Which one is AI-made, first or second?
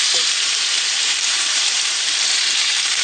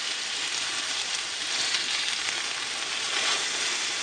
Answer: first